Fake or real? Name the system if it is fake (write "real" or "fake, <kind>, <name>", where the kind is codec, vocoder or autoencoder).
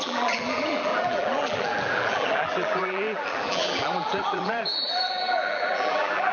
fake, vocoder, BigVGAN v2